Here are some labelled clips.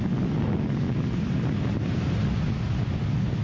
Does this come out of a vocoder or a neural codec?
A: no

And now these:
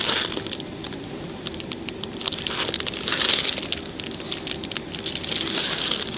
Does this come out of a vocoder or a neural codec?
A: no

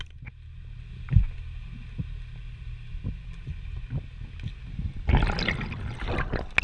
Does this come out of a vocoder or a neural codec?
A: no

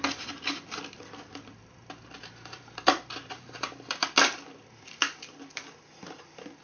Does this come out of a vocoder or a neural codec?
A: yes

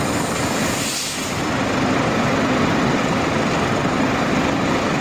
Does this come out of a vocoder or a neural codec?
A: no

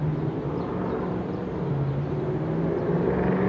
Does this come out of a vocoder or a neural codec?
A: no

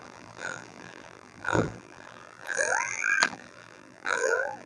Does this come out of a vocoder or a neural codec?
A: yes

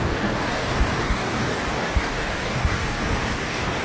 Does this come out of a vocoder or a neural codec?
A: yes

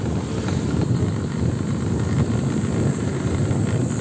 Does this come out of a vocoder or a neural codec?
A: no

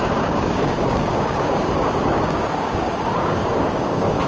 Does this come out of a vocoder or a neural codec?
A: yes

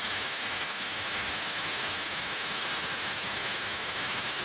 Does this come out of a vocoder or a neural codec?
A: yes